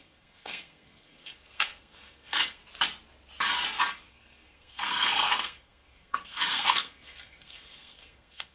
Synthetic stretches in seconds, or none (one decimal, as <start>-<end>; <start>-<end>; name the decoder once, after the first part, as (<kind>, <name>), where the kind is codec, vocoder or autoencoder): 0.0-2.6 (codec, SNAC); 4.1-8.5